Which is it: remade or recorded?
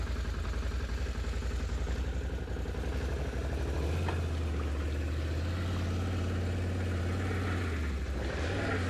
recorded